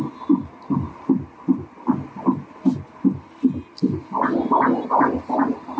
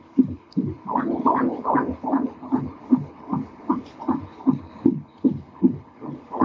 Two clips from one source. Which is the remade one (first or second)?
second